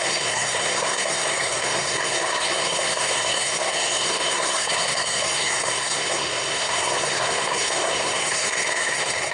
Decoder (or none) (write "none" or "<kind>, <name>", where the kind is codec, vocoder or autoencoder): codec, SNAC